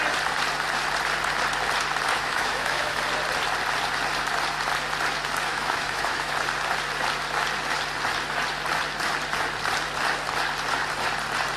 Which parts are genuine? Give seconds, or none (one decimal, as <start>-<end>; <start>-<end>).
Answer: 0.0-2.1; 3.0-5.5; 6.3-11.6